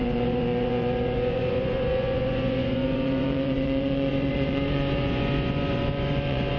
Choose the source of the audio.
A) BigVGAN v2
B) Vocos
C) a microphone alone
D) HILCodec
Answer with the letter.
B